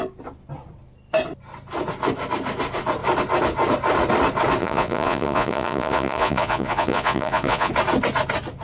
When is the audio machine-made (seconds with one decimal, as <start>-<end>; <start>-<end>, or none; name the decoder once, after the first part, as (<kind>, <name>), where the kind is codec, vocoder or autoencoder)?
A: 4.6-7.7 (vocoder, Vocos)